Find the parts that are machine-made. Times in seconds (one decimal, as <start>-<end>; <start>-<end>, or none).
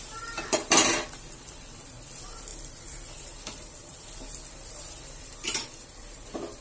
0.0-6.6